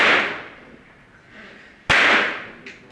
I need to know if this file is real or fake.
real